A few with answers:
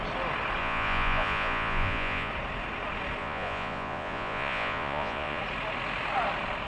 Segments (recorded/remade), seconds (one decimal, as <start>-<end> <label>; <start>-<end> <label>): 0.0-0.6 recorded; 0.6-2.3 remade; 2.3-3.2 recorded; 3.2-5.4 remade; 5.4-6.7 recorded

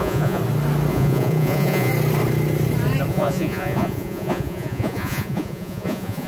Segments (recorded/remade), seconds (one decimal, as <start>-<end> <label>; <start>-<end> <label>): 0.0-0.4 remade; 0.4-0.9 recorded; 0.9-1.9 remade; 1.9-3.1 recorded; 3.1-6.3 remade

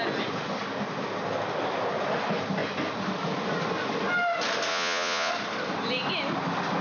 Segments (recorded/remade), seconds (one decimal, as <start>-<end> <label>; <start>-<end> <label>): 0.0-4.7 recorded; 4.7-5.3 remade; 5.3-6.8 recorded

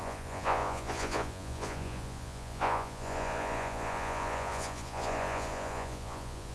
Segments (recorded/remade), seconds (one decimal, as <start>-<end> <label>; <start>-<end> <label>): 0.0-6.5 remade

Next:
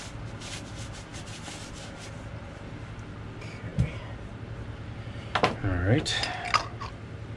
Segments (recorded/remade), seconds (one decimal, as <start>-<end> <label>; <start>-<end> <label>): 0.0-7.4 recorded